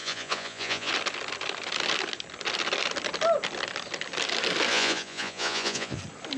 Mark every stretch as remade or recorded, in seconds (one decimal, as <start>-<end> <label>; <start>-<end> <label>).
0.0-0.9 remade; 0.9-4.7 recorded; 4.7-6.0 remade; 6.0-6.4 recorded